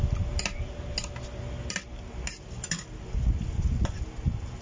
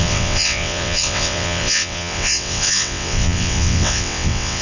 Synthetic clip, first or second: second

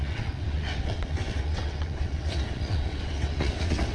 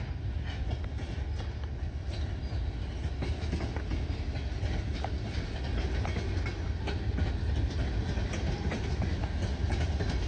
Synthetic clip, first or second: first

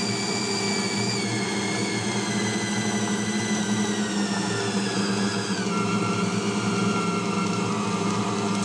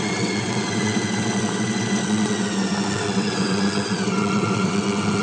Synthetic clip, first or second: second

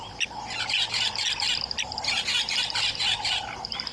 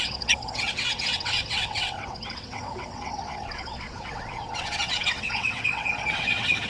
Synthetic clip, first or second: second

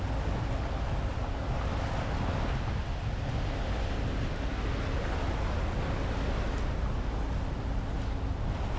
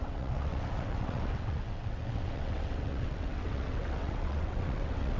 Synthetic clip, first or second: second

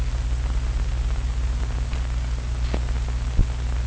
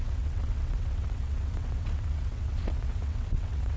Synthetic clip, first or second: second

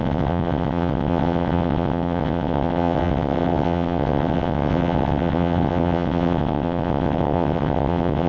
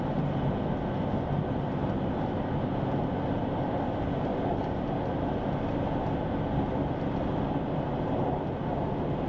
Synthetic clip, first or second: first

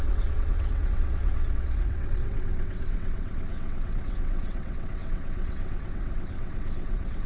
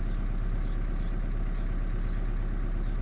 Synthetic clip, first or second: first